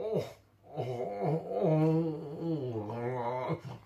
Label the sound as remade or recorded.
recorded